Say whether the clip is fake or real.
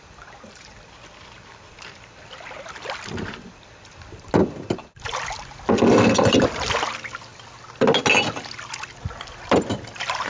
real